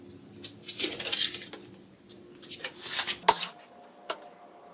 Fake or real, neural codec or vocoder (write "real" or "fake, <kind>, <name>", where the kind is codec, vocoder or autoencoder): real